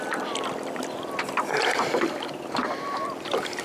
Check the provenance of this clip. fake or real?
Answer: real